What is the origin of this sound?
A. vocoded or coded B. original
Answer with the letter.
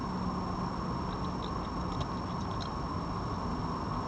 B